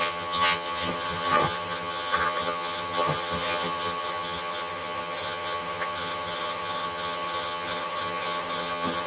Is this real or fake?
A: fake